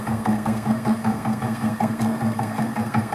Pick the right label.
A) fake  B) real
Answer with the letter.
A